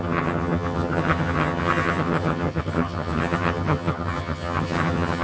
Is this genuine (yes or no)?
no